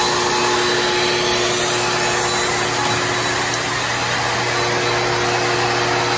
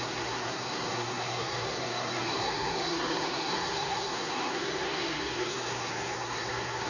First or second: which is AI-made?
second